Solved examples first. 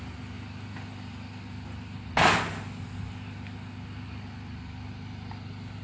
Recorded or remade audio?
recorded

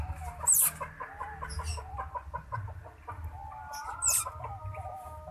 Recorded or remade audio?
recorded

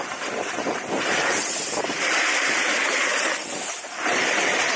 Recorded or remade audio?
recorded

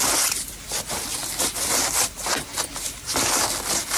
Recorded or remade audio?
remade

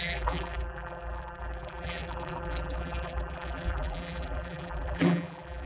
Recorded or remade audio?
remade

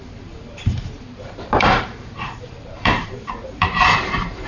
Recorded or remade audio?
remade